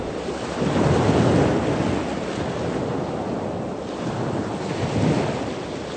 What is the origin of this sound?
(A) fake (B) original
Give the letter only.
B